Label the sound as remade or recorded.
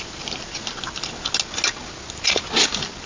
recorded